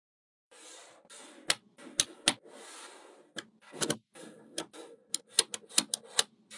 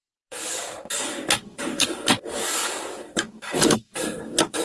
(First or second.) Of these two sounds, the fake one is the second